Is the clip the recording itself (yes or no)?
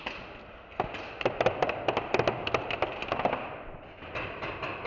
yes